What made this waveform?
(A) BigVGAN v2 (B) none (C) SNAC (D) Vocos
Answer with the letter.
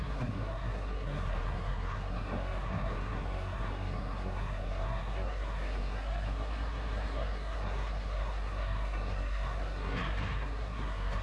C